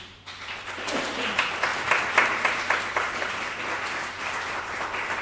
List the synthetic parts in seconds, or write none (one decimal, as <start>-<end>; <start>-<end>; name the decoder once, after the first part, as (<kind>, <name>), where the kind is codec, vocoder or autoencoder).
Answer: 1.7-4.8 (vocoder, BigVGAN v2)